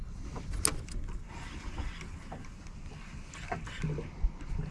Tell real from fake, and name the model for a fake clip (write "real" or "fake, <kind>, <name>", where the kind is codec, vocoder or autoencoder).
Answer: real